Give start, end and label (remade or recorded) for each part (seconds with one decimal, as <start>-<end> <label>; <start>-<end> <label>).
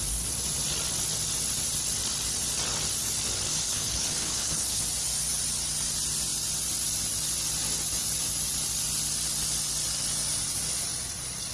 0.0-3.5 recorded; 3.5-4.8 remade; 4.8-11.5 recorded